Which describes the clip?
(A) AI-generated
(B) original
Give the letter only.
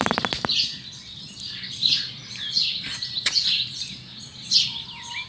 B